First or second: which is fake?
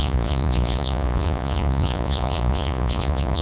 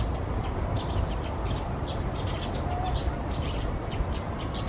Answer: first